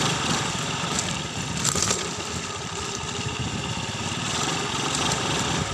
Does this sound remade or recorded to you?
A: remade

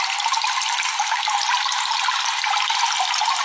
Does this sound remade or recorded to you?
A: recorded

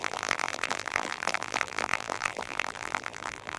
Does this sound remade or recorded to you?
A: remade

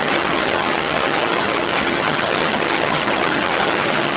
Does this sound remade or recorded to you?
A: remade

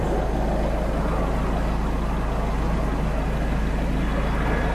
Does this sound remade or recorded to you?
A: recorded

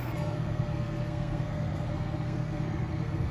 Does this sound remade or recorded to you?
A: remade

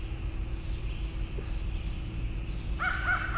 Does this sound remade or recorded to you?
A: recorded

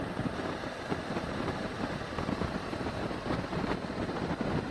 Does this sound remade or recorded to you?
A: remade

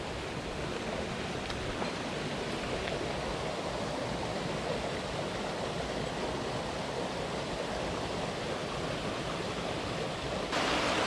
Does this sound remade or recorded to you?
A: recorded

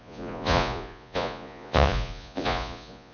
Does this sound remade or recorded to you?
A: remade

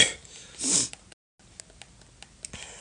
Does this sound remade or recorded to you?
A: recorded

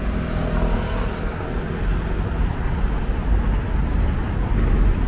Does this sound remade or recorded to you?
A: recorded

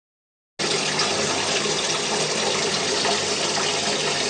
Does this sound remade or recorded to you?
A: recorded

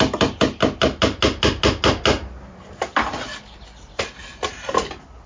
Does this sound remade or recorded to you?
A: recorded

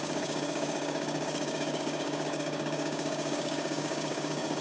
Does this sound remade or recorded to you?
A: remade